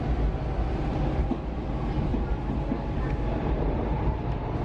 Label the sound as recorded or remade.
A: recorded